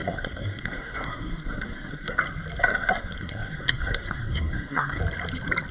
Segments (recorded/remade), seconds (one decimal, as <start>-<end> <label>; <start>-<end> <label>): 0.0-2.2 remade; 2.2-2.6 recorded; 2.6-5.0 remade; 5.0-5.7 recorded